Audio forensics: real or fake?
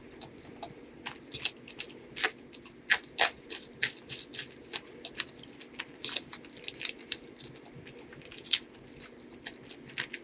real